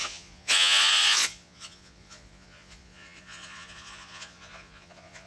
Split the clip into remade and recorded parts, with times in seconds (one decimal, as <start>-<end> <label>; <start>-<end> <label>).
0.0-5.3 remade